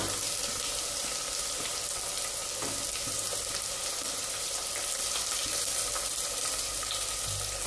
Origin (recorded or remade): recorded